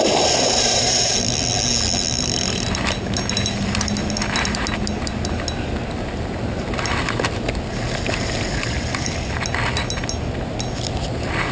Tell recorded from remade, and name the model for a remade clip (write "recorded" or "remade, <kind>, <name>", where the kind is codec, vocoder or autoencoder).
recorded